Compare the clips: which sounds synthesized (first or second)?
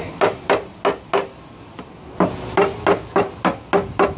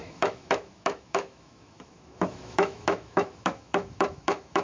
second